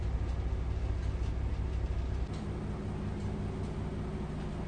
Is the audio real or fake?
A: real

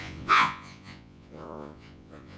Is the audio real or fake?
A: fake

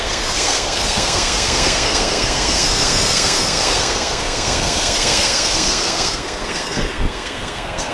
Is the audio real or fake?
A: fake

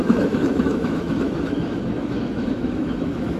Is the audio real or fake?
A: fake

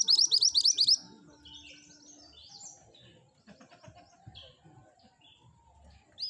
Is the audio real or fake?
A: real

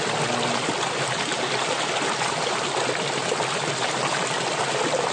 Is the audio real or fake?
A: real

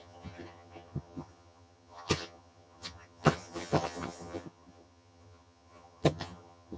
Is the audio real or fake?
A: fake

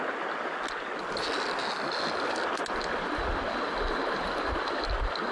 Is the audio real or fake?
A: real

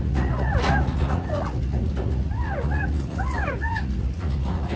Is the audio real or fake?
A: fake